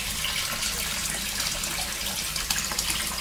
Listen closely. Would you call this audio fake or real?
real